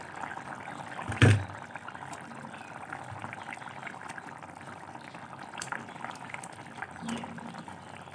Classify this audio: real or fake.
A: real